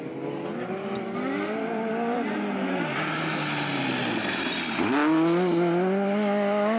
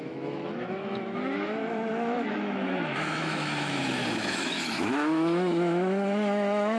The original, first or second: first